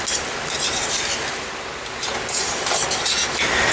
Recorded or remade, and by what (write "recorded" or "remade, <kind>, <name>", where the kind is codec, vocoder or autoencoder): recorded